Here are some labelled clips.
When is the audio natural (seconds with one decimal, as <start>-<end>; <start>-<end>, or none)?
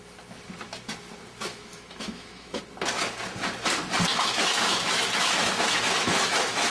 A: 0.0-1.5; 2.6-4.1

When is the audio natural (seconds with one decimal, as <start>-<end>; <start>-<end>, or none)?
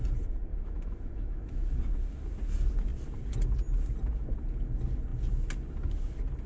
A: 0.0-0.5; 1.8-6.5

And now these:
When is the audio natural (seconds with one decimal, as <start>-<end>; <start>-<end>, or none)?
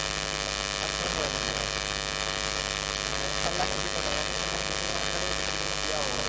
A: 0.0-1.1; 2.6-3.1; 4.4-4.9; 5.4-6.3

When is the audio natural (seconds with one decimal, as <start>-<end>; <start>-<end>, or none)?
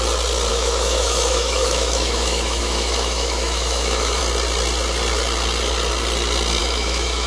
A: 0.0-0.5; 4.2-6.6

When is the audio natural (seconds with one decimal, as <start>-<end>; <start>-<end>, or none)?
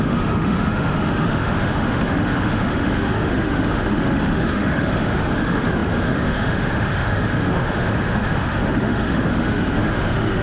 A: none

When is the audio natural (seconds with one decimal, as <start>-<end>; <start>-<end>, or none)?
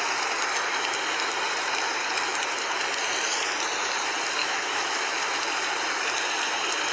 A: 0.0-4.4; 5.2-6.9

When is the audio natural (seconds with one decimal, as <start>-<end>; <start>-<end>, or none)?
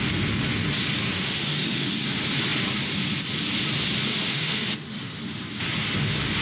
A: 0.0-1.1; 1.9-4.1; 5.2-6.4